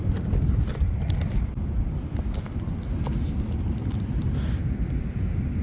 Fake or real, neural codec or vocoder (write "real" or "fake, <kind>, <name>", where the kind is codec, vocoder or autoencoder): real